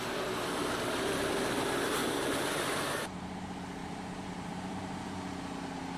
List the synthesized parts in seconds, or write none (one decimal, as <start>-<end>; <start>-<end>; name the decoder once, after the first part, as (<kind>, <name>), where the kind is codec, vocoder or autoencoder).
2.0-2.8 (vocoder, BigVGAN v2); 3.8-5.0